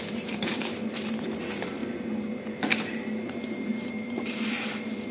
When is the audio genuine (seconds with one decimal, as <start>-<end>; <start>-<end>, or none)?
none